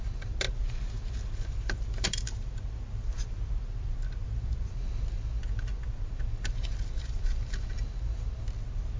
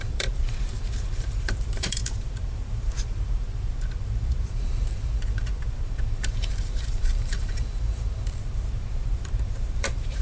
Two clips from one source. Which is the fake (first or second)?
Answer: second